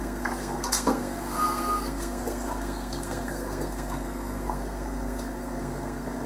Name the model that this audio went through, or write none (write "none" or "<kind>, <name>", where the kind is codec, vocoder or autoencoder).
codec, SNAC